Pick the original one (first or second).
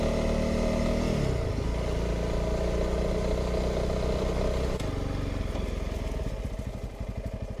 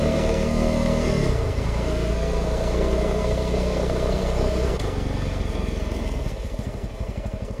first